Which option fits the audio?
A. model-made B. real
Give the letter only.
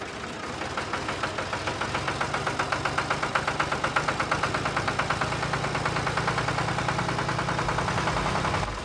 B